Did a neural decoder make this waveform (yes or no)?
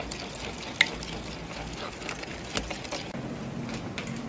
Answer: no